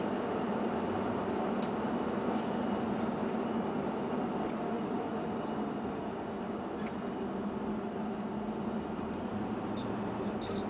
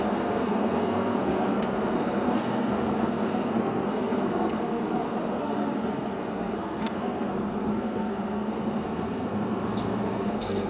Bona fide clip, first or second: first